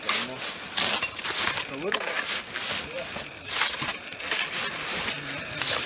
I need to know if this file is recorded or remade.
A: recorded